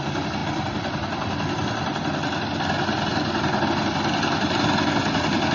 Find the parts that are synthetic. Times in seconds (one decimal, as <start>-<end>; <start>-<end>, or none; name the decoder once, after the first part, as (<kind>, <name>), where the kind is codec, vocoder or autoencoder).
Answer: none